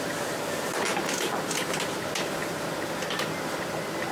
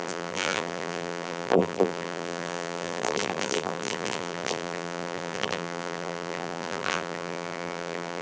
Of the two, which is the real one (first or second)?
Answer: first